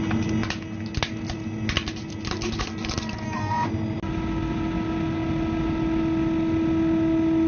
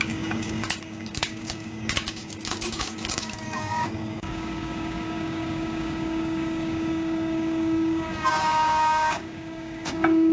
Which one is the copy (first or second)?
second